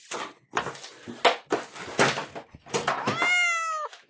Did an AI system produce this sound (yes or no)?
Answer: no